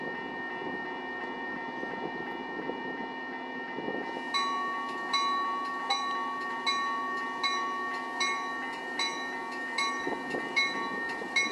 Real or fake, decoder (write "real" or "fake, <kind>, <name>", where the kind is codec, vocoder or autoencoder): real